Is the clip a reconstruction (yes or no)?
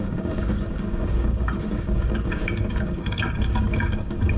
yes